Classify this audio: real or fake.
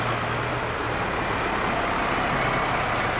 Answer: real